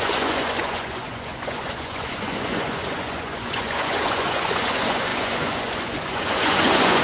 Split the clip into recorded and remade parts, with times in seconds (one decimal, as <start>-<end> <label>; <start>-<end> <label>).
0.0-7.0 remade